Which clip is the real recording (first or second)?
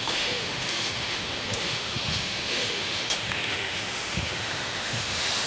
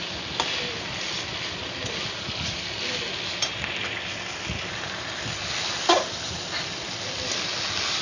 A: second